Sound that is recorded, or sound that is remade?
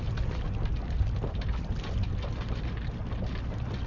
recorded